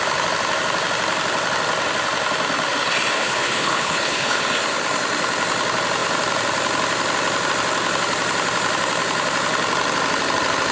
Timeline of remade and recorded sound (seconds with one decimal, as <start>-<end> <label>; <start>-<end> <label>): 0.0-3.1 recorded; 3.1-4.4 remade; 4.4-10.7 recorded